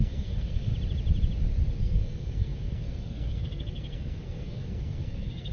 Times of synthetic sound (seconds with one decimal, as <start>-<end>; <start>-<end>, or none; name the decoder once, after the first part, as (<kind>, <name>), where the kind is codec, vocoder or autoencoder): 0.0-0.7 (codec, SNAC); 1.8-5.5